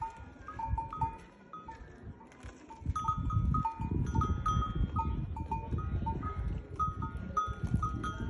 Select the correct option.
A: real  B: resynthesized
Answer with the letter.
A